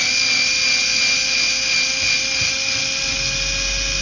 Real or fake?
real